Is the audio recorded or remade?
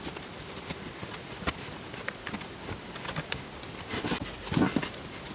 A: recorded